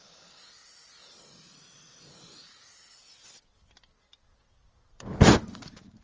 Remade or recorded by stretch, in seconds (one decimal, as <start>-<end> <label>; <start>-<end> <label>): 0.0-6.0 recorded